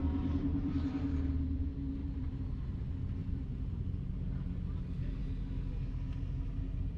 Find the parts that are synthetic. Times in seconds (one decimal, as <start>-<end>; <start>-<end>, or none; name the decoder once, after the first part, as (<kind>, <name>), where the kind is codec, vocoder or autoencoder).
0.0-1.1 (vocoder, BigVGAN v2); 2.0-2.6; 3.2-3.8